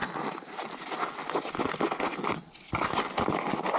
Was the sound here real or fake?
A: real